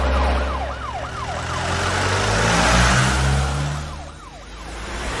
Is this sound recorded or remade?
recorded